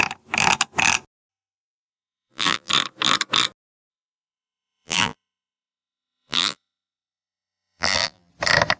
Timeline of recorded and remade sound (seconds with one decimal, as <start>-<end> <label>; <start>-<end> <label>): 0.0-1.3 recorded; 1.3-2.7 remade; 2.7-3.9 recorded; 3.9-8.3 remade; 8.3-8.8 recorded